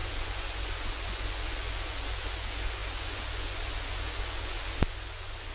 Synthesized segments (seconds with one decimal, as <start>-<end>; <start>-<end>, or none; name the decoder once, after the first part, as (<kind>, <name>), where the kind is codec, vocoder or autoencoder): 0.0-5.5 (vocoder, Vocos)